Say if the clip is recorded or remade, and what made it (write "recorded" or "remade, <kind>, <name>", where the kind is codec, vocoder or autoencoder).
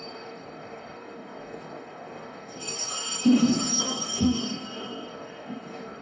remade, codec, DAC